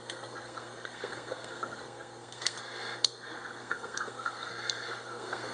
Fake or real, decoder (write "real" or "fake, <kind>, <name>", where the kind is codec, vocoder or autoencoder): fake, codec, SNAC